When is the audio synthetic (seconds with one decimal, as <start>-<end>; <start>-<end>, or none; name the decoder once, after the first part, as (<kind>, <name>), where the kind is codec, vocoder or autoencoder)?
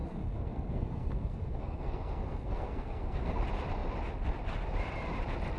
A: 0.0-3.4 (codec, SNAC)